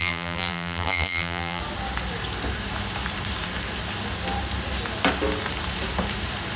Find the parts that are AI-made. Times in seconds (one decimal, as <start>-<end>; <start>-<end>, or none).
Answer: 0.0-1.6